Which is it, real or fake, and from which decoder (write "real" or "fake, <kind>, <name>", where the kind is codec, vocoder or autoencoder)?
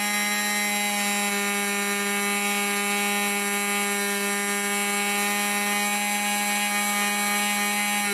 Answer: real